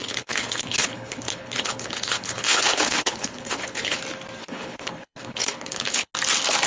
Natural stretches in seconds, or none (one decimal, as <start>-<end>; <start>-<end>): 4.0-4.4; 6.1-6.7